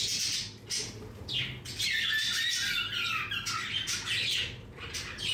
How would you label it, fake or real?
real